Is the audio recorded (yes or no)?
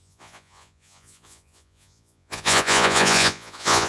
no